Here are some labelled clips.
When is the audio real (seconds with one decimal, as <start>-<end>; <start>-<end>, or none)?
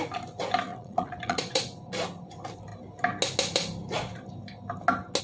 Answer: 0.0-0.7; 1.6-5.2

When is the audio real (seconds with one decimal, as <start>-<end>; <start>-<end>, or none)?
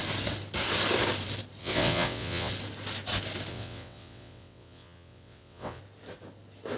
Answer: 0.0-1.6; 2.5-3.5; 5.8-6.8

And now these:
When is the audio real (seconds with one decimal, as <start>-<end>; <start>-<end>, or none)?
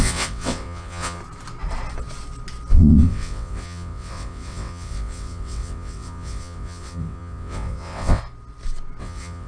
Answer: 1.2-2.7; 8.2-9.0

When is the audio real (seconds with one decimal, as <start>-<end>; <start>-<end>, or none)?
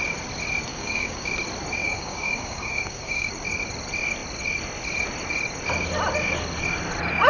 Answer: 0.0-0.7; 1.3-1.8; 3.3-7.3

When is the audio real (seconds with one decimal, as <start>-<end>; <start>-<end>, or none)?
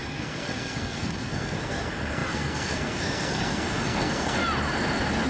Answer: 4.4-5.3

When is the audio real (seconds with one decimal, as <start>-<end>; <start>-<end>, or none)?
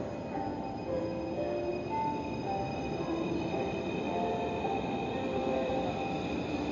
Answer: 0.0-0.5; 1.0-1.7; 5.7-6.7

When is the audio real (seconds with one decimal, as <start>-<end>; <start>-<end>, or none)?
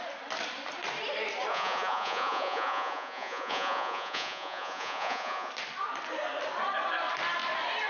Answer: 0.0-1.5; 5.5-7.9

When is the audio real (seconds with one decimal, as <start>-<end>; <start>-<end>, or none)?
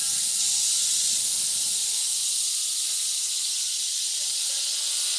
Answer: 0.0-5.2